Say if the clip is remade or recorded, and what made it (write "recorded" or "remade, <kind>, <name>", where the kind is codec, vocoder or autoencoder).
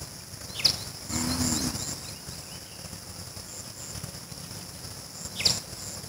recorded